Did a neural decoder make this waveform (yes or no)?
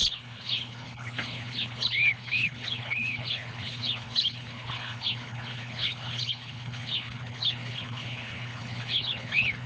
yes